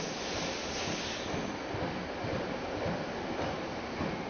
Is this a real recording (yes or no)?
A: yes